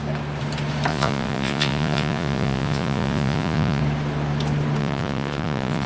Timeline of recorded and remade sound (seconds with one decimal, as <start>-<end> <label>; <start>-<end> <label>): 0.0-0.9 recorded; 0.9-3.8 remade; 3.8-4.8 recorded; 4.8-5.9 remade